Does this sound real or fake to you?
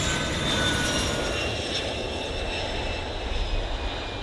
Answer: real